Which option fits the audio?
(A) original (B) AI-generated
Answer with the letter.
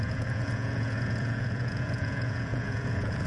B